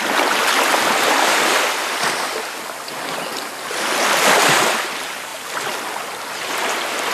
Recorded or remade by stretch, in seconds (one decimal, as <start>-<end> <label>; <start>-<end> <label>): 0.0-7.1 recorded